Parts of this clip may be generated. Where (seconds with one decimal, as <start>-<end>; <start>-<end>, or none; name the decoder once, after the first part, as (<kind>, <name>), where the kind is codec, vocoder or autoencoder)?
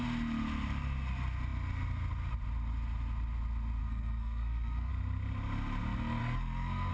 3.8-4.9 (codec, SNAC); 6.2-6.9